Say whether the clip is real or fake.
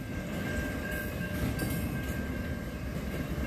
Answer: fake